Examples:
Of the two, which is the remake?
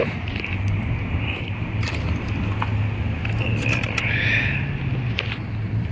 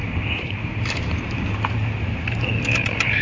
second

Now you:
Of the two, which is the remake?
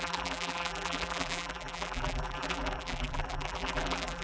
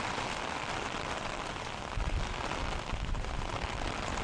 first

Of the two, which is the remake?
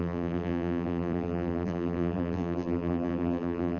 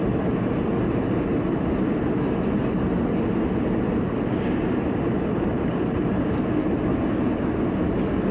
first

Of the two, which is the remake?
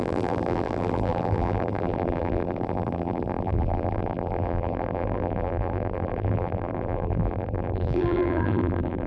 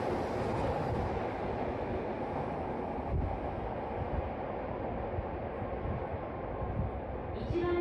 first